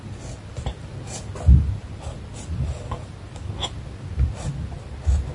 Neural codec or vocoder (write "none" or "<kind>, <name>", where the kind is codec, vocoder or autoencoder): none